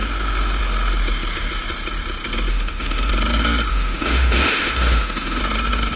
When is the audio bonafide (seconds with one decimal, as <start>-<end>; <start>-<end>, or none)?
0.0-2.5; 3.1-3.7; 5.4-6.0